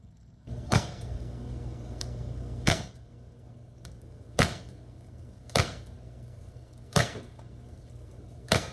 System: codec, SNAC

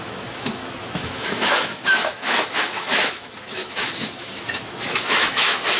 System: autoencoder, DAC-VAE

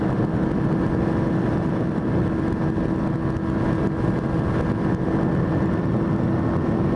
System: none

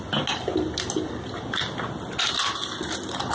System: none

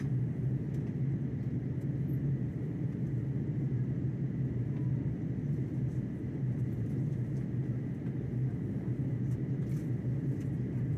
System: vocoder, BigVGAN v2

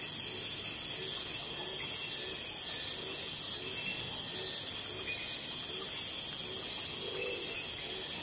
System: none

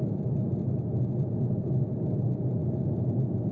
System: none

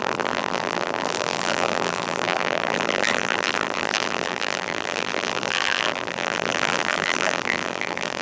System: vocoder, BigVGAN v2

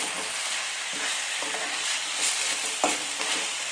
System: none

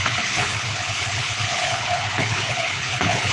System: codec, HILCodec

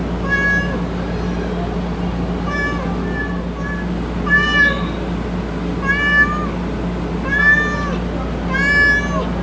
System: none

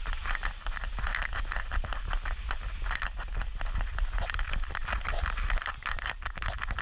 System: none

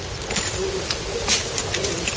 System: none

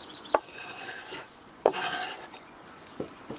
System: vocoder, Vocos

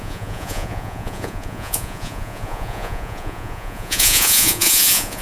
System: vocoder, Vocos